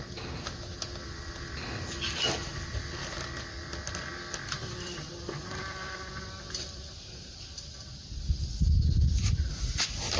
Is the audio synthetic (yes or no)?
no